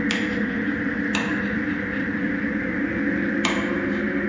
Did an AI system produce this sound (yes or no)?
no